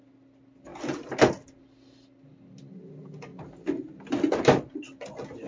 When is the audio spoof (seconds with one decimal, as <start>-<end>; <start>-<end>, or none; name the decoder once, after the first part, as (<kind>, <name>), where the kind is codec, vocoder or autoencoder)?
none